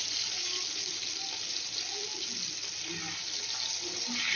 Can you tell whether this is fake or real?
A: real